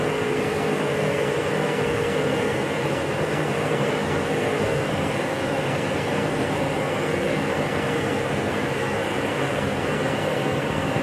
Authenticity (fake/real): fake